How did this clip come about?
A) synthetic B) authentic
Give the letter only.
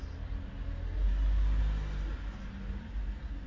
B